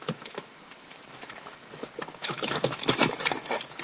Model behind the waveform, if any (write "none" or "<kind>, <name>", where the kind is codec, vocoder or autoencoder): autoencoder, DAC-VAE